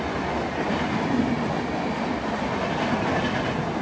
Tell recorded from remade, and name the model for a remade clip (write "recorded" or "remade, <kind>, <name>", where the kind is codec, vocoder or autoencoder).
recorded